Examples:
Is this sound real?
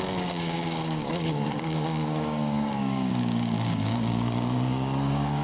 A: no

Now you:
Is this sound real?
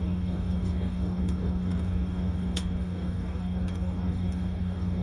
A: no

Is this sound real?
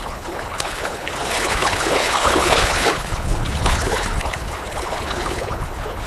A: no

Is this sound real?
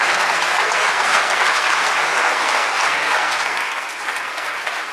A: no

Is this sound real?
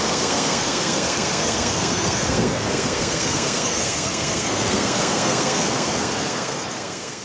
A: no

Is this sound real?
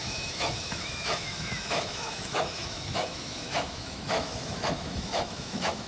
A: no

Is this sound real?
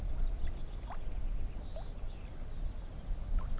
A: yes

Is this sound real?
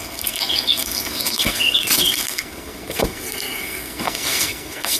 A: no